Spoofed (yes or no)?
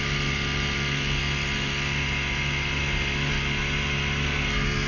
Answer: no